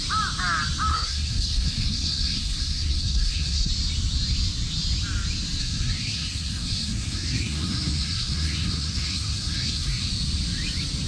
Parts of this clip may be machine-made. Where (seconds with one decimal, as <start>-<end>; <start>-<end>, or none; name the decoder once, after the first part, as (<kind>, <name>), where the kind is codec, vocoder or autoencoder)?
0.9-3.7 (codec, SNAC); 5.6-10.1

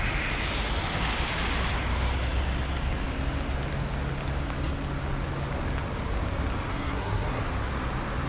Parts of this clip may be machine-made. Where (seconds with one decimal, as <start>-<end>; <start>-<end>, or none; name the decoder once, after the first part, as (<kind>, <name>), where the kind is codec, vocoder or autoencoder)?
6.7-7.4 (codec, SNAC)

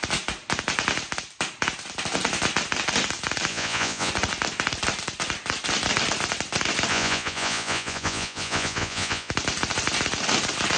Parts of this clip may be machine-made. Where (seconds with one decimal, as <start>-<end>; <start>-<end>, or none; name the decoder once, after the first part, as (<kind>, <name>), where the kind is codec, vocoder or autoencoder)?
3.5-4.1 (vocoder, Vocos); 6.9-9.3

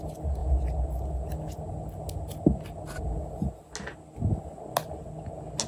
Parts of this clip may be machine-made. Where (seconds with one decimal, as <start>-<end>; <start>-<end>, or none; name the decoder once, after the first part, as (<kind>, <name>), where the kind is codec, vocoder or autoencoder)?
none

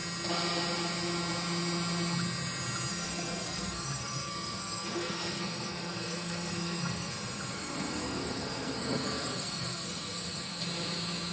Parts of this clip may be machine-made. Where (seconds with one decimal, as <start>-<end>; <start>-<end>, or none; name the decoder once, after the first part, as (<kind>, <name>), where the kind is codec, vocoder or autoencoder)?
2.9-7.1 (codec, SNAC); 7.5-10.6